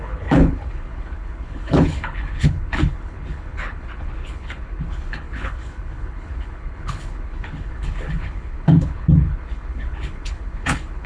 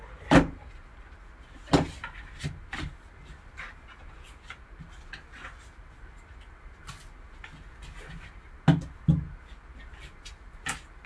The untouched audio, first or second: second